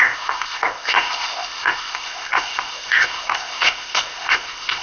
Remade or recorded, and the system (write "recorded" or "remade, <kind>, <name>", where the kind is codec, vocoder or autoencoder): remade, codec, ZipCodec